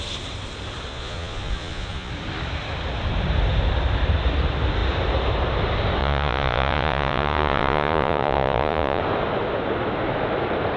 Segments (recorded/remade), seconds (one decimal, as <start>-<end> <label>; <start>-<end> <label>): 0.0-0.9 recorded; 0.9-2.1 remade; 2.1-6.0 recorded; 6.0-9.0 remade; 9.0-10.8 recorded